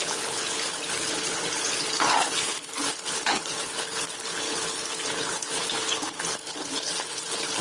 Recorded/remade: remade